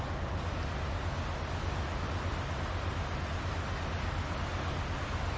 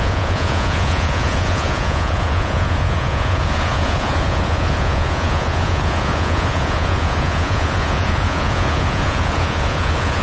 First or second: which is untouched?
first